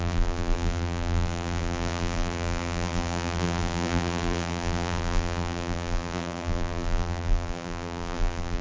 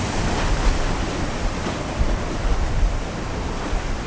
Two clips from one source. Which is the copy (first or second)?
first